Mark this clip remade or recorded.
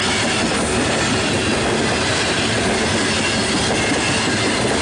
recorded